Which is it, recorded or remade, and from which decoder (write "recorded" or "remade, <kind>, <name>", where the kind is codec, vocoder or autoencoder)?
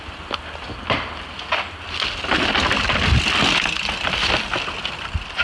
recorded